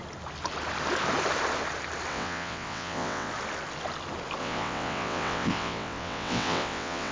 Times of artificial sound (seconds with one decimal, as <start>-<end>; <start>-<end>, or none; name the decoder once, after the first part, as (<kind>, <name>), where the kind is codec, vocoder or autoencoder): 2.1-3.3 (vocoder, WaveNeXt); 4.4-7.1